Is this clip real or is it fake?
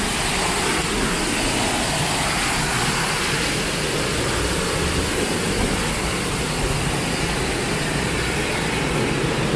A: real